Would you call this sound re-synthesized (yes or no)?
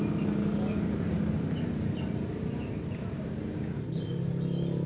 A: no